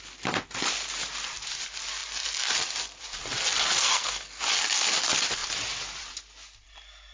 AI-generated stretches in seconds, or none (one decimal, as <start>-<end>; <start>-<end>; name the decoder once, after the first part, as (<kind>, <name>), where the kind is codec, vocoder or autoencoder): 3.8-4.4 (codec, SNAC)